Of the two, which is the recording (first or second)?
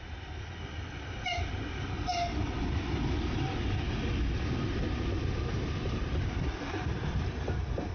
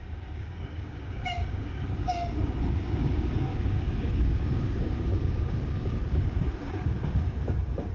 first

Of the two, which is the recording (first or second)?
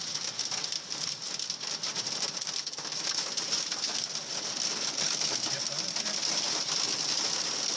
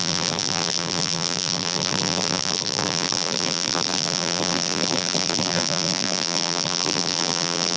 first